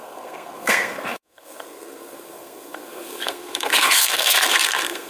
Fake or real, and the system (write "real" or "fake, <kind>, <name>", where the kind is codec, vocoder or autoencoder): fake, codec, SNAC